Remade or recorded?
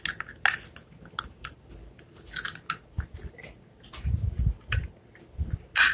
recorded